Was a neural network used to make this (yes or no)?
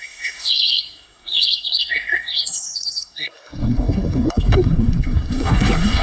yes